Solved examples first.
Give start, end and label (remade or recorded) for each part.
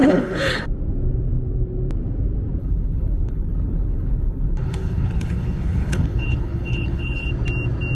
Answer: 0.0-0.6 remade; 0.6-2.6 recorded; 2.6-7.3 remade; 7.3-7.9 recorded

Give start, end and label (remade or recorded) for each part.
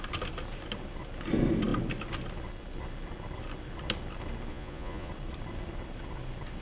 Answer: 0.0-4.5 recorded; 4.5-5.1 remade; 5.1-6.6 recorded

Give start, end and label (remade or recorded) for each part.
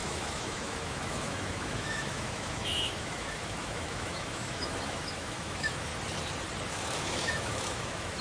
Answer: 0.0-5.9 remade; 5.9-6.7 recorded; 6.7-8.2 remade